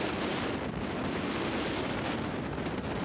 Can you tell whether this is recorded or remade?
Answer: recorded